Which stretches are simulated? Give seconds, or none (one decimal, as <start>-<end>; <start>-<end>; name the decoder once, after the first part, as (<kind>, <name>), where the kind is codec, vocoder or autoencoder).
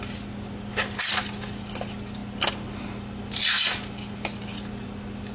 none